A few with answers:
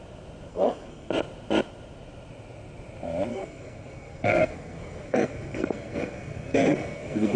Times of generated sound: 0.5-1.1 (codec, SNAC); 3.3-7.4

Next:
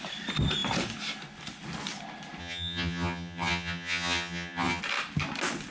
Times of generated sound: 2.4-4.8 (vocoder, HiFi-GAN)